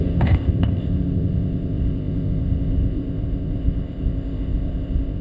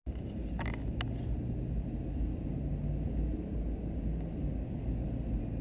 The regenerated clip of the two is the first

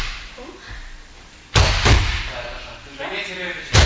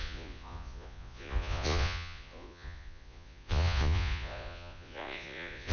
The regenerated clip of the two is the second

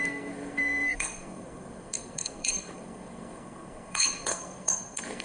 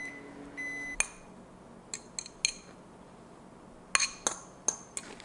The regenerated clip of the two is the first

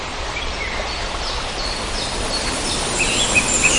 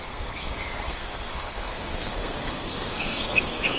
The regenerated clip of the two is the second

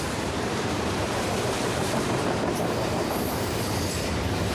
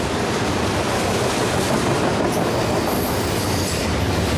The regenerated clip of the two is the first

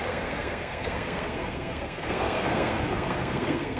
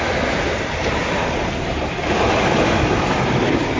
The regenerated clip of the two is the first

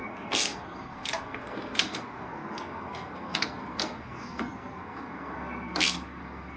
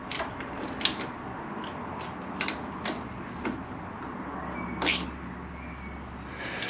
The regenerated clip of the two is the first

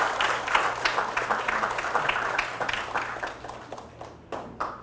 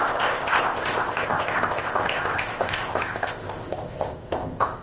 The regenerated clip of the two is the second